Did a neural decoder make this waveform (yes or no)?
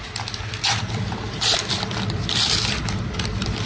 yes